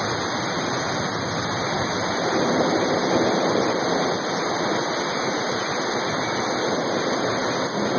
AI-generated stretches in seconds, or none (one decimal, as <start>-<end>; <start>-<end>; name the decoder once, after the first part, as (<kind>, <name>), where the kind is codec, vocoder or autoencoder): none